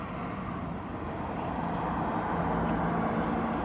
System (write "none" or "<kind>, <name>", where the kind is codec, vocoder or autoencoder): none